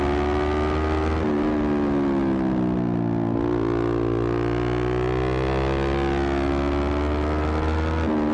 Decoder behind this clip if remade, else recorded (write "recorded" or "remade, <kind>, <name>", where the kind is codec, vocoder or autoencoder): recorded